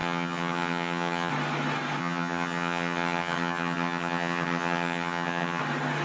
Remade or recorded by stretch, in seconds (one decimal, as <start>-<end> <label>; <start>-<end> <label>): 0.0-1.3 remade; 1.3-2.0 recorded; 2.0-5.6 remade; 5.6-6.0 recorded